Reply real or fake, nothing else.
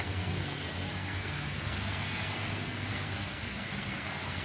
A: fake